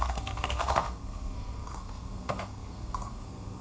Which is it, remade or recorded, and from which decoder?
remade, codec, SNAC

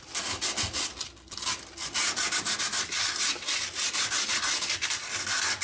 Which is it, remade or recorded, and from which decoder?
remade, vocoder, BigVGAN v2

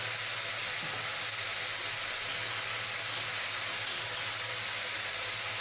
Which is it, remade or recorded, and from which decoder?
recorded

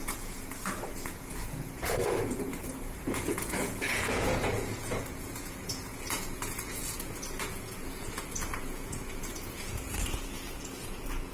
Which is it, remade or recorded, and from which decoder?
remade, vocoder, Vocos